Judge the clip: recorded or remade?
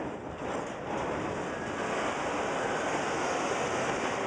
recorded